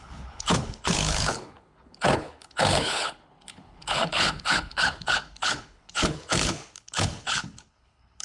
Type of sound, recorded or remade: remade